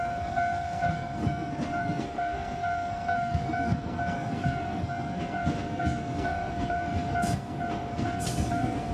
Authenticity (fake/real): fake